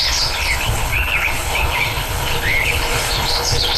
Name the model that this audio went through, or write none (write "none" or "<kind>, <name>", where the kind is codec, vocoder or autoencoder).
codec, HILCodec